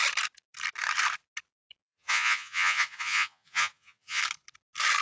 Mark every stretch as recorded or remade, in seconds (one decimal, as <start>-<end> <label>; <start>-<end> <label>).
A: 0.0-1.8 recorded; 1.8-4.2 remade; 4.2-5.0 recorded